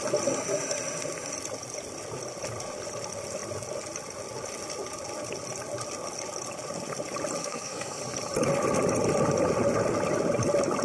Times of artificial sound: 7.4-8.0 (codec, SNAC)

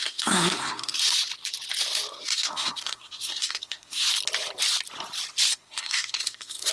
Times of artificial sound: 0.0-1.0 (codec, SNAC); 2.1-4.1; 5.5-6.7

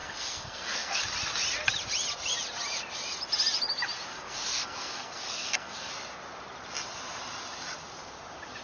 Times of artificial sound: 0.0-1.0 (codec, SNAC); 4.1-5.9

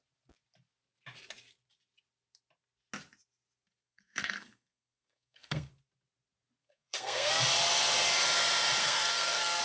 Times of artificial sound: 3.8-5.7 (codec, SNAC); 6.6-7.3; 8.8-9.6

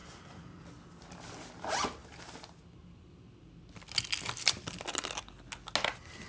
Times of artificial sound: none

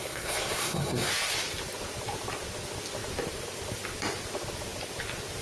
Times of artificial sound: 0.0-1.1 (codec, SNAC)